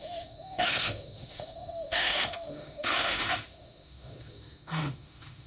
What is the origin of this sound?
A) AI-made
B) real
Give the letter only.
A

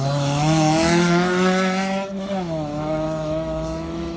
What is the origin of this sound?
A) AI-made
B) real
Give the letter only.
A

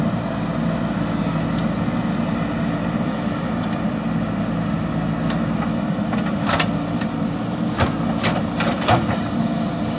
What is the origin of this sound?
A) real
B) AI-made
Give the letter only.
A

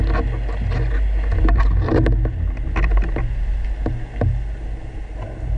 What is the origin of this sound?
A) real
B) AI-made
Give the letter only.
A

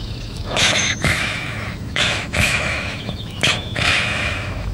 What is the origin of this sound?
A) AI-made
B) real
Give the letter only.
A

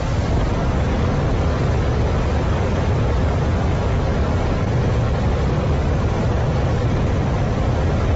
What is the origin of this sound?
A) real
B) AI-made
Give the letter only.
A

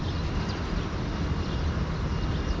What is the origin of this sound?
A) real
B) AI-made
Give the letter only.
A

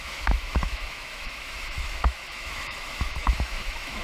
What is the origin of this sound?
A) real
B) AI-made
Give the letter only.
B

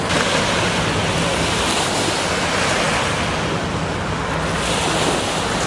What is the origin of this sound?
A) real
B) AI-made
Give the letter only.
A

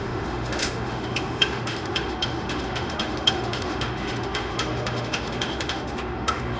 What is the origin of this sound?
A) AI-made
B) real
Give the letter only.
A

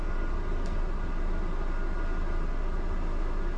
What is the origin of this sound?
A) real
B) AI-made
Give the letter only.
A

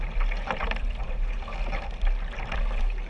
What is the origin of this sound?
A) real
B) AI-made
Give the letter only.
A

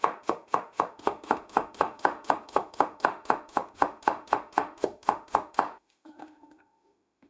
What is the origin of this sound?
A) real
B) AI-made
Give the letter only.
B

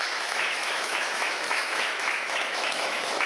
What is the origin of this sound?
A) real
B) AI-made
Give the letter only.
B